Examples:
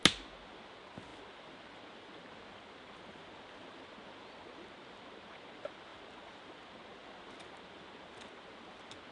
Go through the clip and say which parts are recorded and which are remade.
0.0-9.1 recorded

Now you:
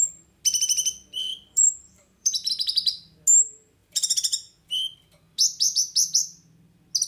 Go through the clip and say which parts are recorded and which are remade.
0.0-1.3 recorded; 1.3-2.5 remade; 2.5-3.8 recorded; 3.8-4.7 remade; 4.7-7.1 recorded

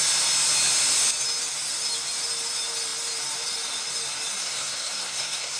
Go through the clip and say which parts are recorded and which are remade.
0.0-4.4 recorded; 4.4-5.6 remade

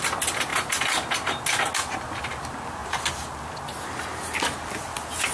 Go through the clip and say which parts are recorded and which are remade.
0.0-5.3 recorded